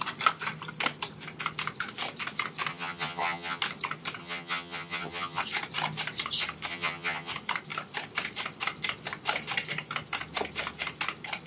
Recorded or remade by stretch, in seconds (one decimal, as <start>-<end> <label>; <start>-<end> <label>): 0.0-2.7 recorded; 2.7-3.6 remade; 3.6-4.2 recorded; 4.2-5.4 remade; 5.4-6.7 recorded; 6.7-7.3 remade; 7.3-11.5 recorded